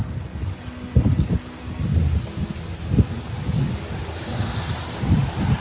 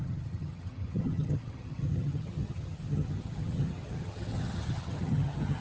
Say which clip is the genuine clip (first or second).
first